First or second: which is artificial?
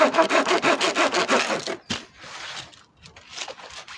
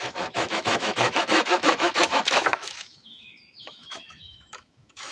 second